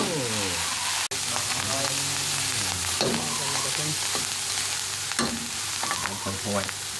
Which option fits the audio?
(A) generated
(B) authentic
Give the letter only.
B